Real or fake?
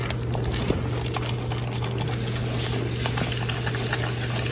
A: real